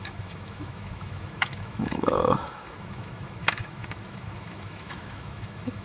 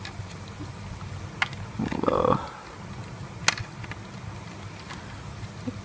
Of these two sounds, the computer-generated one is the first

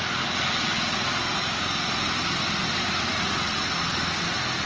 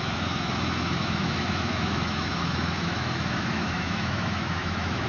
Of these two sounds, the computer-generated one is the second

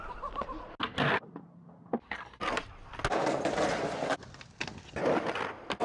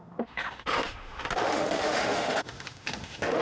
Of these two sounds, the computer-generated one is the second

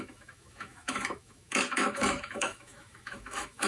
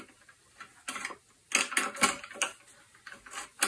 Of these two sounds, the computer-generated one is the first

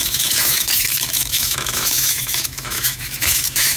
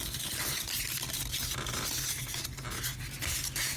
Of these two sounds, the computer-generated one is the first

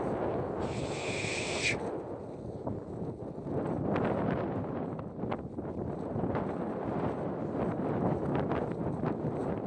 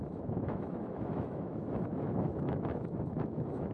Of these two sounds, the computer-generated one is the second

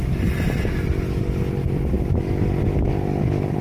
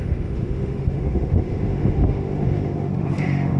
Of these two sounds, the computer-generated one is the second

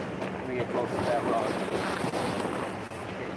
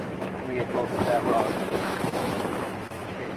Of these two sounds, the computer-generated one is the second